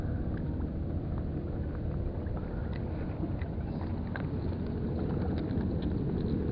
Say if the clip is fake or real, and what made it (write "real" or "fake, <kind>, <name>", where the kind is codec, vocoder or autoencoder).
real